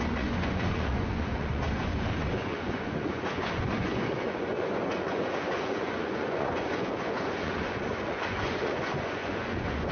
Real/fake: fake